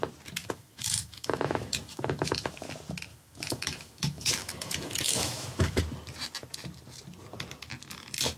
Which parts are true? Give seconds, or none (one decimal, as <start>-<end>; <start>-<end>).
0.0-0.4; 2.7-3.1; 5.8-8.4